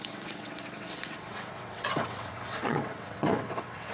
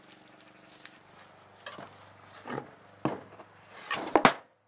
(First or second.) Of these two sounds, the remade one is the first